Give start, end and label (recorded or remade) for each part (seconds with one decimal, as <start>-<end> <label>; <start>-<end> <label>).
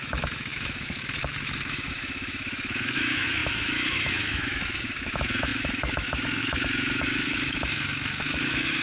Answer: 0.0-8.8 remade